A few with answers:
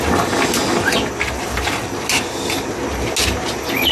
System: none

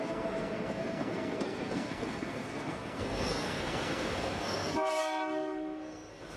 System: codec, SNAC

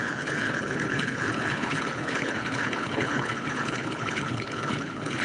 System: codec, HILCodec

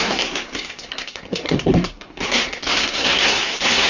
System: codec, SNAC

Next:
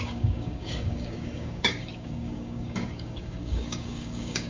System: codec, DAC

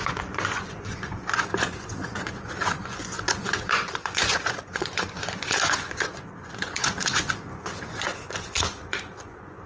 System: vocoder, Vocos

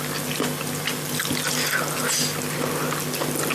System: none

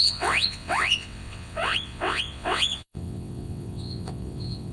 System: vocoder, WaveNeXt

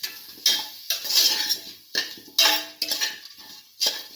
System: none